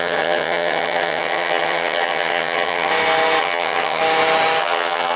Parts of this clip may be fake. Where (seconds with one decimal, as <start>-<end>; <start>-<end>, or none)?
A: 0.0-2.9; 3.4-4.0; 4.6-5.2